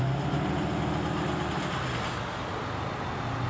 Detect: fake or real real